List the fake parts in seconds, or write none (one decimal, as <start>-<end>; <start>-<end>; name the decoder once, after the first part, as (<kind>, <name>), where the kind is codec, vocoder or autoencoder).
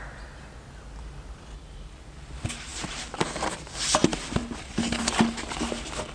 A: none